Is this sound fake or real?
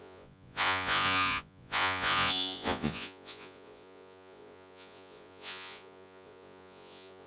fake